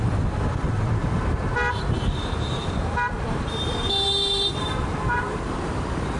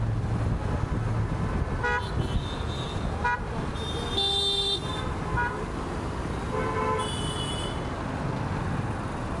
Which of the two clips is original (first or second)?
second